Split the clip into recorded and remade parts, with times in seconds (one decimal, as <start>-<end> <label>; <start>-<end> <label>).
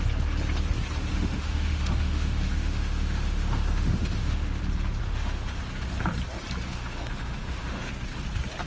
0.0-1.1 recorded; 1.1-4.6 remade; 4.6-5.0 recorded; 5.0-5.6 remade; 5.6-6.7 recorded; 6.7-7.9 remade; 7.9-8.7 recorded